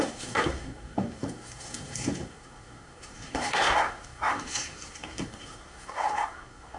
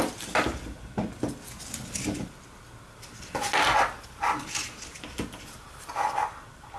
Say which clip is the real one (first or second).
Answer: second